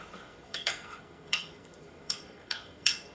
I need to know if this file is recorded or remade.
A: remade